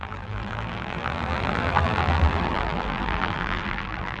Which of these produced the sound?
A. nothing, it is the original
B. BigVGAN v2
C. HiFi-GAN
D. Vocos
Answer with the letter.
B